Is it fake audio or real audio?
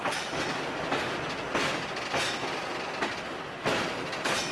real